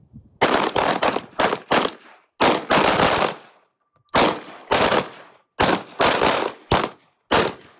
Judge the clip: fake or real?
real